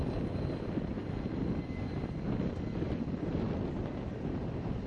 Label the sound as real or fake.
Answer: real